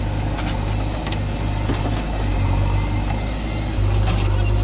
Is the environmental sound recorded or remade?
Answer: recorded